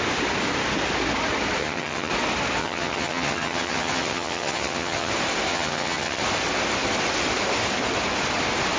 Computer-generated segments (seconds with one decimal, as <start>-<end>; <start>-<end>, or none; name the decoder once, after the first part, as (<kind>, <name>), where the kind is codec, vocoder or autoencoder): 1.6-2.1 (vocoder, HiFi-GAN); 2.6-5.1; 5.5-6.2